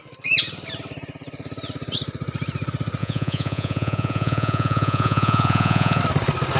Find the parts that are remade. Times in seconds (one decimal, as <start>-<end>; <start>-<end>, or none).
3.0-6.0